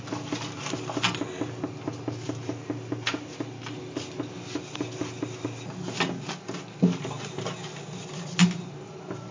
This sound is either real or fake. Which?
real